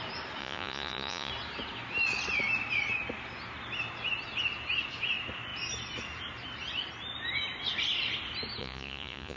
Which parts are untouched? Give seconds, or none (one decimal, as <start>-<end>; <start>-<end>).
0.0-0.4; 1.3-8.6